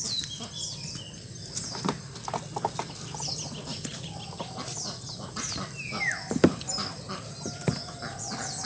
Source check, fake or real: real